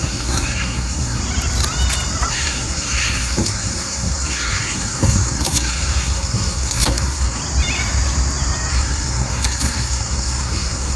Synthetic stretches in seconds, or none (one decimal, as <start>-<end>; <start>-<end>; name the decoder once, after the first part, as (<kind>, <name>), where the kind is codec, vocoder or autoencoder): 0.0-1.2 (codec, SNAC); 2.3-7.4; 8.7-11.0